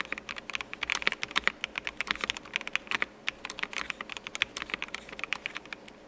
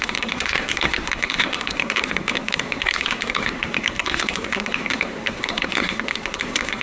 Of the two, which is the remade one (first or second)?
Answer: second